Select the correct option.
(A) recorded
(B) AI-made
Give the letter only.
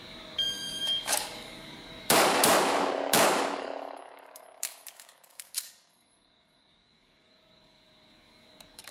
B